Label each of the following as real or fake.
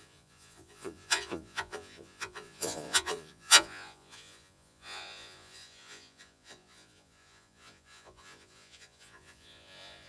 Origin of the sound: fake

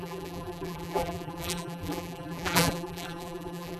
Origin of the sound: fake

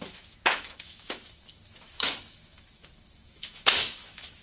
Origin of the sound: fake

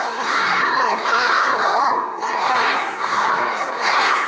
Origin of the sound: fake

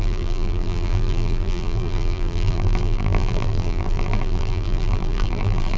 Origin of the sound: fake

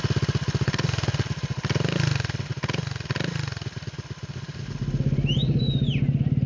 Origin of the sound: real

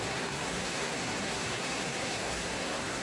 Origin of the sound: fake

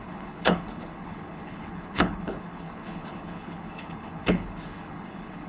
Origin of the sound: fake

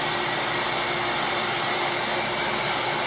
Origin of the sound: real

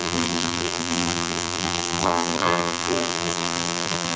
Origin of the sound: fake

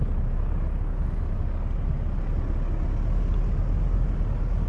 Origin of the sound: real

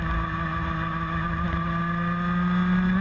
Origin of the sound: real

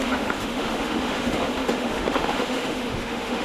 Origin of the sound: fake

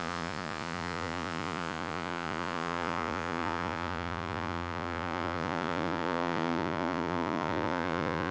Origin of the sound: fake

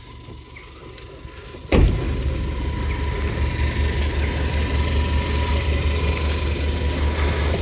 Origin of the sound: real